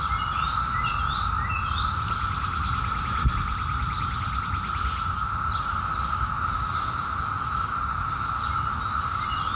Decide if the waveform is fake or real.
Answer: real